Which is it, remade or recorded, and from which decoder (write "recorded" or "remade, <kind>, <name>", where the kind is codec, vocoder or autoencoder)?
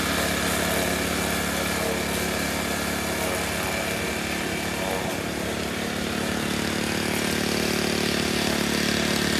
recorded